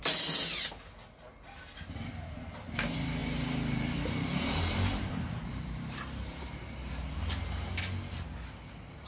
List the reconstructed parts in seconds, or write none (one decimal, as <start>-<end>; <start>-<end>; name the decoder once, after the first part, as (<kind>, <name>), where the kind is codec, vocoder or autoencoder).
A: 3.2-7.8 (vocoder, BigVGAN v2)